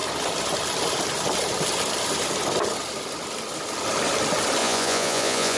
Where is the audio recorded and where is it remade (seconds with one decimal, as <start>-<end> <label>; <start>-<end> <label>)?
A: 0.0-4.6 recorded; 4.6-5.6 remade